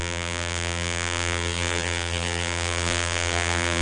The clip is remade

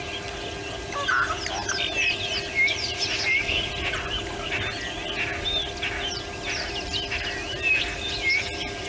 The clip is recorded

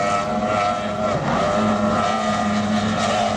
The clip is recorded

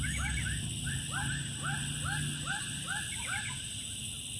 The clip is recorded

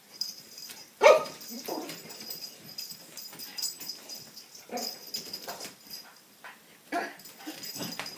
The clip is remade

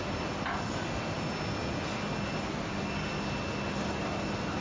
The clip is recorded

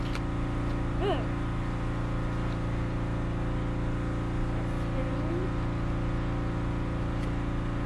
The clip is recorded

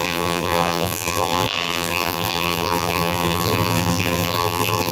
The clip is remade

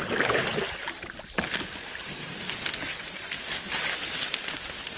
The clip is recorded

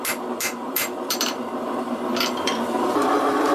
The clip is remade